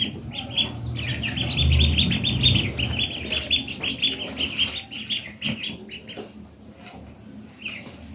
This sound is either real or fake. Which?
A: real